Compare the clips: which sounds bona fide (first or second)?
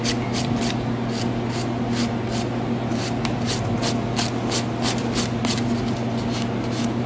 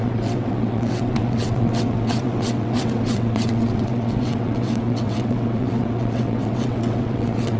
first